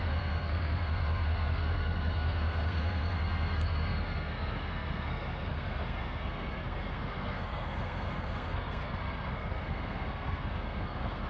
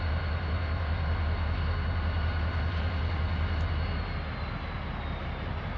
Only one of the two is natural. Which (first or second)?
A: second